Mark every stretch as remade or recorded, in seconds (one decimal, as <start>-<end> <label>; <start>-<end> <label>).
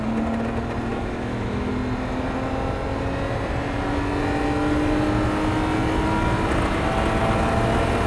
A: 0.0-0.9 recorded; 0.9-1.7 remade; 1.7-8.1 recorded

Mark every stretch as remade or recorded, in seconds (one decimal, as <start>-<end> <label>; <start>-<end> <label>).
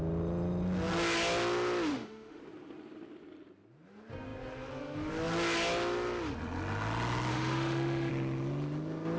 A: 0.0-1.9 recorded; 1.9-2.4 remade; 2.4-7.3 recorded; 7.3-8.1 remade; 8.1-9.2 recorded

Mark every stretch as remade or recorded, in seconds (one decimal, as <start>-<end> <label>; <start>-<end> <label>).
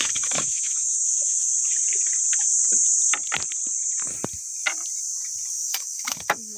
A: 0.0-1.5 remade; 1.5-5.5 recorded; 5.5-6.6 remade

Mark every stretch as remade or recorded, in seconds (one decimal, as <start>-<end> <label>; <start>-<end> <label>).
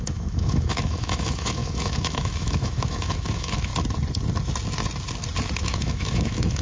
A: 0.0-3.7 remade; 3.7-5.6 recorded; 5.6-6.6 remade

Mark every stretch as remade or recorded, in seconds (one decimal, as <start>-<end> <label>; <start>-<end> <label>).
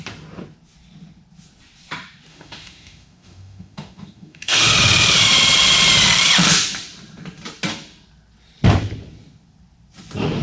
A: 0.0-2.3 recorded; 2.3-4.7 remade; 4.7-10.4 recorded